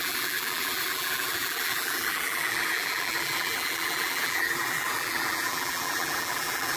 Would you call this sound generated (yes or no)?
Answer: yes